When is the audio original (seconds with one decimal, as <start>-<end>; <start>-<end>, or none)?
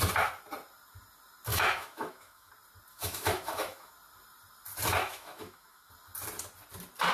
0.0-1.5; 2.5-2.9; 3.9-5.0; 5.9-7.1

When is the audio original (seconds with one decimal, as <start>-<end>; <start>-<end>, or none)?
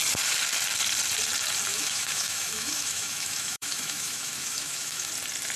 0.0-1.7; 5.1-5.6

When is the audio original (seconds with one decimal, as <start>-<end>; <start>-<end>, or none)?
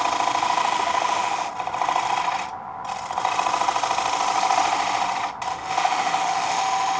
0.0-0.4; 1.5-5.5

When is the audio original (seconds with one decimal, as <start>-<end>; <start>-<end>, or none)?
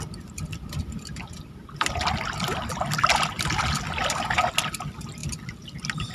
0.0-6.1